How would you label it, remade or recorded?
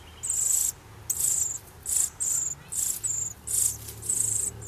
recorded